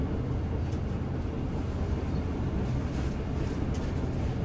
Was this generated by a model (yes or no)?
no